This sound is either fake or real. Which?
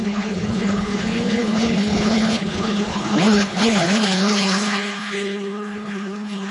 fake